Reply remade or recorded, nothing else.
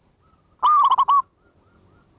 recorded